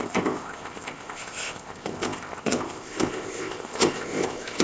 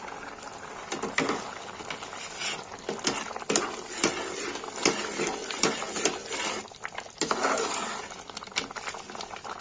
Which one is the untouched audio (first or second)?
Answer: second